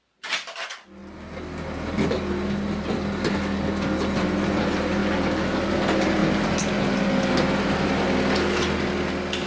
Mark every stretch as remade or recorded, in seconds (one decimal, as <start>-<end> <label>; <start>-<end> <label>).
0.0-9.5 recorded